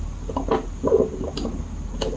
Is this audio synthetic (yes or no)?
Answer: no